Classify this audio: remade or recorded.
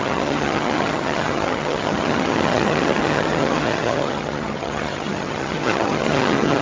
remade